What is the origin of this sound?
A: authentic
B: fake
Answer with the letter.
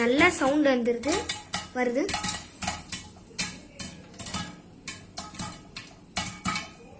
A